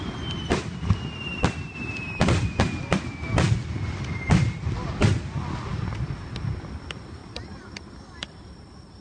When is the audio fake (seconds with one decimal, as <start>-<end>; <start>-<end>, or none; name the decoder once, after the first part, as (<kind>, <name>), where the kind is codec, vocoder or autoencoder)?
7.2-9.0 (vocoder, BigVGAN v2)